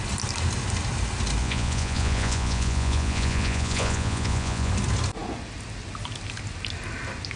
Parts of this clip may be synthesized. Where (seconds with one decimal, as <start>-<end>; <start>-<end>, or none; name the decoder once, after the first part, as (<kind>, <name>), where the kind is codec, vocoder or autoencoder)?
1.4-4.7 (vocoder, Vocos)